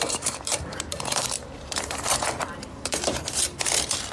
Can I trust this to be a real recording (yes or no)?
no